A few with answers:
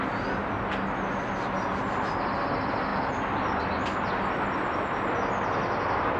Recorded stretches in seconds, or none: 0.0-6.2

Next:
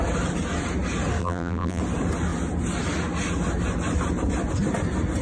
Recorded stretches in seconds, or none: 0.0-1.2; 1.8-5.2

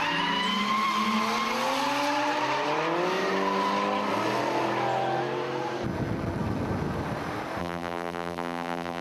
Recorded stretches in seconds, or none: 0.0-7.6